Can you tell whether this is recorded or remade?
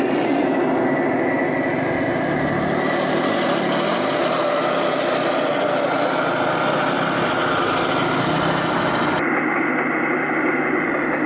recorded